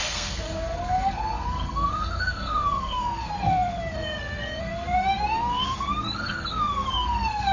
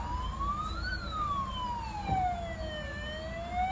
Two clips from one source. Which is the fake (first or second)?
first